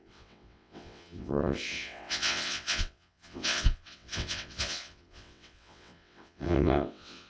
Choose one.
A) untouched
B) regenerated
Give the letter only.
B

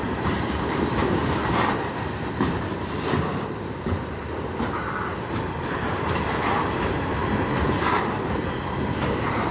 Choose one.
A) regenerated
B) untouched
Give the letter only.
A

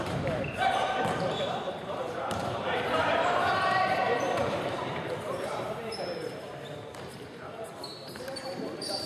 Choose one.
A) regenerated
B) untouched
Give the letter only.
A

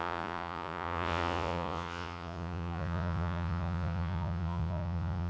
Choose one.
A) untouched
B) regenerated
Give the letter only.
B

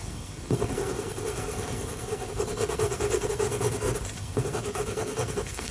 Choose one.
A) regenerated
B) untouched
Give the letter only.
A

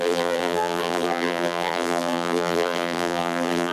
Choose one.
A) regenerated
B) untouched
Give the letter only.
A